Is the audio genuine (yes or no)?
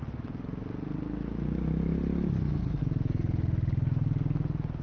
yes